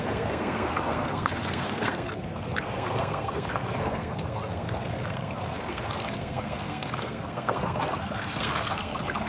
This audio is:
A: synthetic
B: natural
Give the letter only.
A